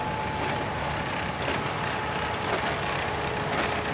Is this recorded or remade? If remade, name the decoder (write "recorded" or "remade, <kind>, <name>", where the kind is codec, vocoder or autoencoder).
recorded